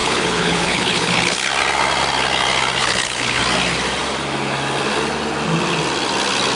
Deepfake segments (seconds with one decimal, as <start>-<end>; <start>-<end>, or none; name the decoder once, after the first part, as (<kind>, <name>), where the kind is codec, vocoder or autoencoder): 0.0-1.5 (codec, HILCodec); 2.8-3.4

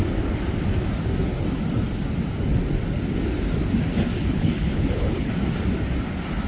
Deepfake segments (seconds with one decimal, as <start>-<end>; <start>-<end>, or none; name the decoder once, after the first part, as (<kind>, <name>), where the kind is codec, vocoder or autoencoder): 4.2-5.3 (codec, HILCodec)

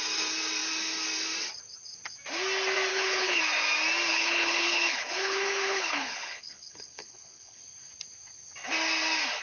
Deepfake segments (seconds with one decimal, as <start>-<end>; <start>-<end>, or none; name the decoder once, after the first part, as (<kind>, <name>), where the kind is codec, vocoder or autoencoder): 2.9-3.4 (codec, HILCodec); 4.1-7.6

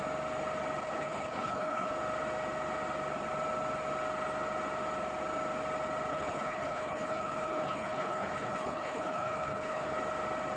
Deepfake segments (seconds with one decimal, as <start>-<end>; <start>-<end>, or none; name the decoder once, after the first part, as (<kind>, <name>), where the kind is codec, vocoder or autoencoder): 0.8-1.9 (codec, HILCodec); 6.1-10.0